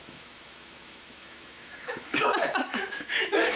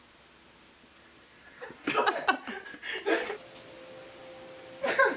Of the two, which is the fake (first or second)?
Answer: first